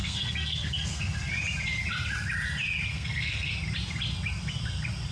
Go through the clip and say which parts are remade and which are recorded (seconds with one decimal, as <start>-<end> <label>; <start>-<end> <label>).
0.0-1.3 remade; 1.3-2.9 recorded; 2.9-3.5 remade; 3.5-5.1 recorded